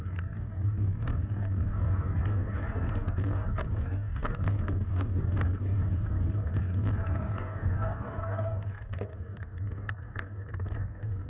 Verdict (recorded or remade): remade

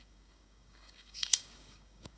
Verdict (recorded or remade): remade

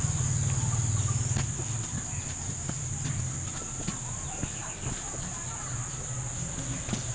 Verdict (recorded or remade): recorded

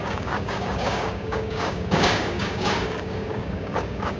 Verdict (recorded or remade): remade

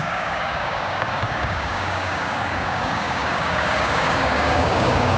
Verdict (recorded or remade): remade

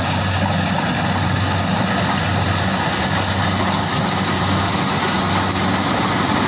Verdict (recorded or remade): recorded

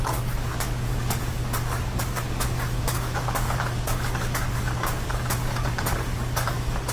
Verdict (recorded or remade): remade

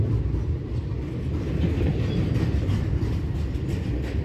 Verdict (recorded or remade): recorded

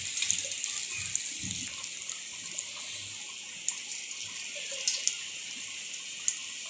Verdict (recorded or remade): recorded